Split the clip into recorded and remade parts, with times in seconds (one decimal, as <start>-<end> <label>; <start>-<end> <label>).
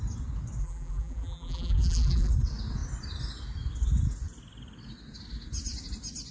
0.0-0.6 recorded; 0.6-2.3 remade; 2.3-6.3 recorded